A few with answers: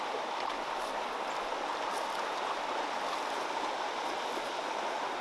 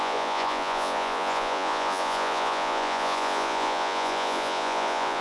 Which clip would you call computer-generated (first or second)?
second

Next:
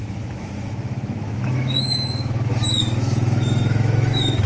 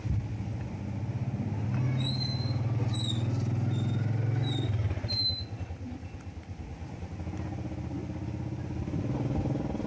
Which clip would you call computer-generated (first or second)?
first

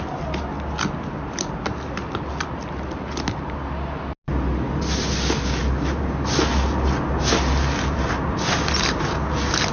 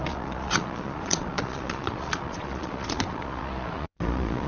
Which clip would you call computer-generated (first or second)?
second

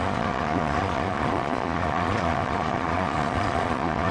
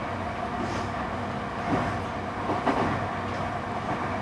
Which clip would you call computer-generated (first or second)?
first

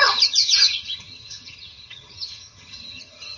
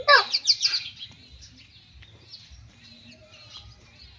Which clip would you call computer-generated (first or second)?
first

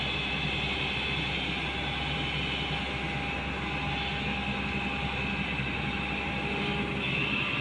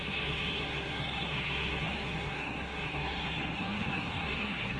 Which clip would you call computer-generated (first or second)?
second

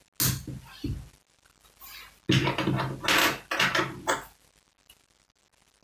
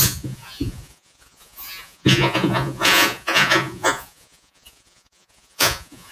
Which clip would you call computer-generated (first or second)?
second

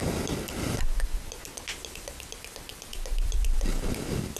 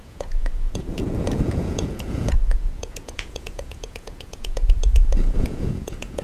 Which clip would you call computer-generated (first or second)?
second